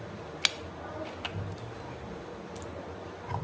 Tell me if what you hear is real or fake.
real